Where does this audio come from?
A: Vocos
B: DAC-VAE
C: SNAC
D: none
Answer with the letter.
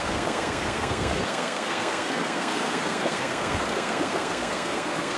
C